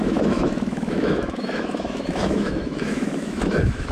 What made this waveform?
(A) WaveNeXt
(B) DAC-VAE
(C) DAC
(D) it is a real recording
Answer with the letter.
B